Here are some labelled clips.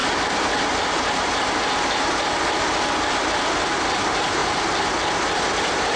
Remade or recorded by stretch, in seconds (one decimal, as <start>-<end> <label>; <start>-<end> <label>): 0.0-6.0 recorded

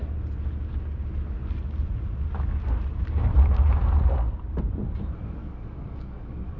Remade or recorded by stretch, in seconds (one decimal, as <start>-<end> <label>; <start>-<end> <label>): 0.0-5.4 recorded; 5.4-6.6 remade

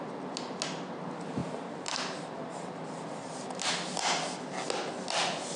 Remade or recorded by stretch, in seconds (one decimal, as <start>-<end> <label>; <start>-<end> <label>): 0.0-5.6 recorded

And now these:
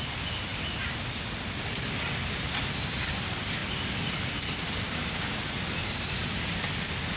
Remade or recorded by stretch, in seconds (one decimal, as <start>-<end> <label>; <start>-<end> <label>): 0.0-7.2 recorded